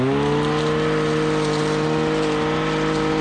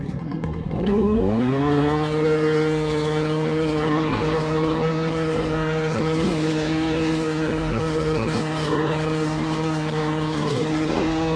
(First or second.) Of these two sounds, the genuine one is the first